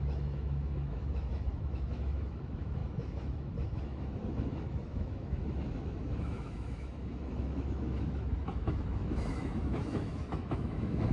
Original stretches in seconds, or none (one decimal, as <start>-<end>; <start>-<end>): none